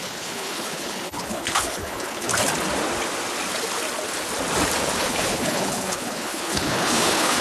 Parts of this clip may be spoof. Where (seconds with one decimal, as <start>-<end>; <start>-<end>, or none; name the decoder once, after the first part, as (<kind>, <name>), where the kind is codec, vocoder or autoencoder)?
0.0-2.3 (codec, HILCodec); 5.0-7.4